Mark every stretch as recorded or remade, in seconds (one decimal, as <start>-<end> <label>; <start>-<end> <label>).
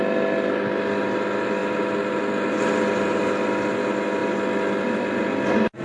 0.0-5.8 recorded